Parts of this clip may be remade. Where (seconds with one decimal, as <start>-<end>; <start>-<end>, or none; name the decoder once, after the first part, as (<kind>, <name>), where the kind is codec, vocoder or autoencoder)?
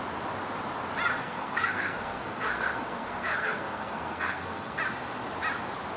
1.2-4.8 (codec, SNAC)